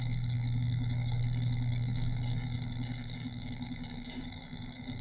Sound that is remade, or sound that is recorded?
remade